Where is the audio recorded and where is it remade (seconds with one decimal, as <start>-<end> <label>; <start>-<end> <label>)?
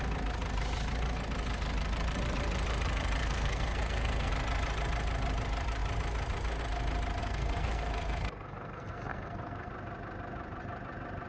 0.0-3.2 recorded; 3.2-4.3 remade; 4.3-7.2 recorded; 7.2-9.7 remade; 9.7-11.3 recorded